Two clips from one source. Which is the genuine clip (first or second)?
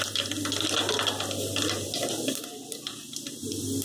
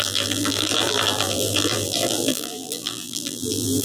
first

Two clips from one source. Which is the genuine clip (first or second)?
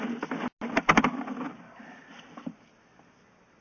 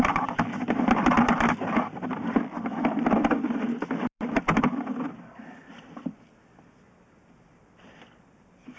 first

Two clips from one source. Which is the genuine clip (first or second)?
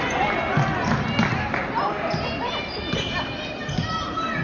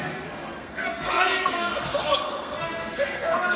first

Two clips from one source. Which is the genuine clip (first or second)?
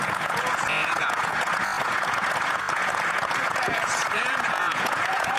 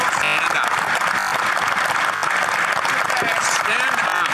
second